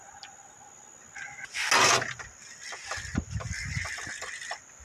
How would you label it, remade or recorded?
recorded